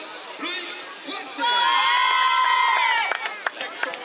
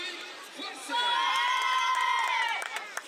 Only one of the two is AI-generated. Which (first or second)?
second